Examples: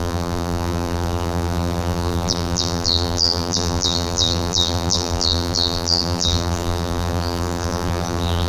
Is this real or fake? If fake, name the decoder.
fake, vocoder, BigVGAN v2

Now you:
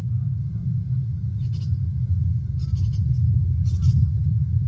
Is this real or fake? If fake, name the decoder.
real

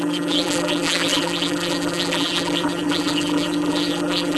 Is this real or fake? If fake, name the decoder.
fake, vocoder, BigVGAN v2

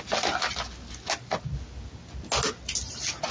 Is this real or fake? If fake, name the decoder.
real